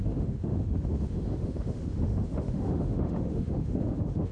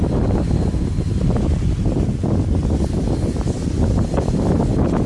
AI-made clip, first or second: first